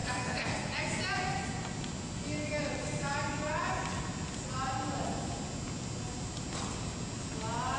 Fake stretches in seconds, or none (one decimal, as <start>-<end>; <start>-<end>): 0.0-0.5